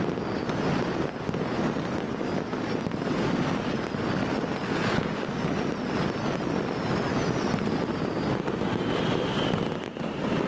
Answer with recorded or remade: recorded